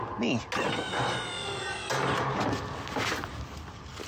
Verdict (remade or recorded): recorded